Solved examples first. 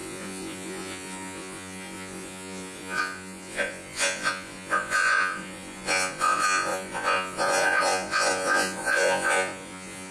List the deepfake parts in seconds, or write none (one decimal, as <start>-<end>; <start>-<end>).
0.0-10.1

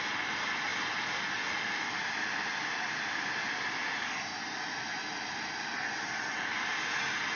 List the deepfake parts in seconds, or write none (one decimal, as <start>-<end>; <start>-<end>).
none

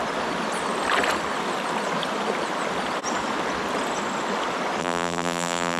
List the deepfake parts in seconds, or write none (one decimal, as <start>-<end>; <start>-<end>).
4.8-5.8